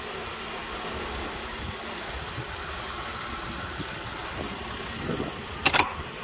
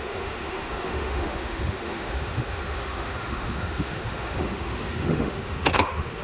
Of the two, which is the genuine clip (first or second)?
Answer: first